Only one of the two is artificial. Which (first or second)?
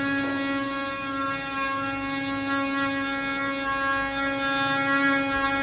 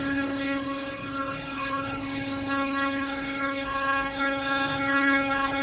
second